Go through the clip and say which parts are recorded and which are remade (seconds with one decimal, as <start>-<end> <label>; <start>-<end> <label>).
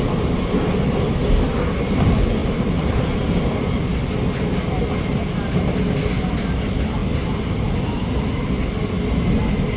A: 0.0-2.4 recorded; 2.4-3.5 remade; 3.5-9.8 recorded